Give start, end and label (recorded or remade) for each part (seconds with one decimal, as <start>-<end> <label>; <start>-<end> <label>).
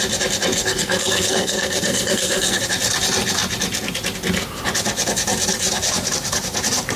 0.0-0.6 recorded; 0.6-2.6 remade; 2.6-7.0 recorded